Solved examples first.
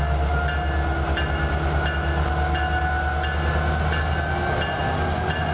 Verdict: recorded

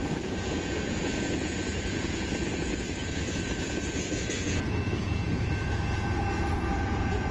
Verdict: remade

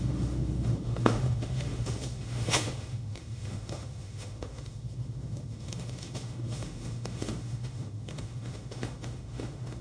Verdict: remade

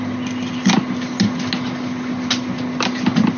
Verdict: recorded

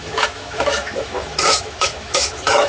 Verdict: remade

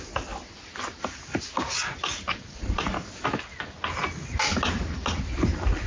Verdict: recorded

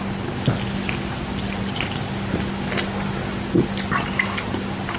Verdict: recorded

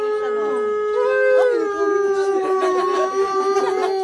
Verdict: recorded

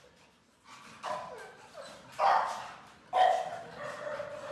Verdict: recorded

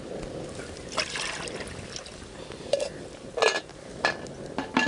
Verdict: recorded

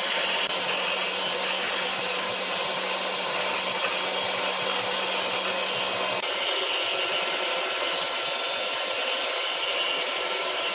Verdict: recorded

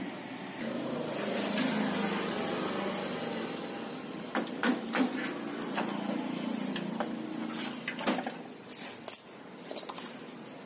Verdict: recorded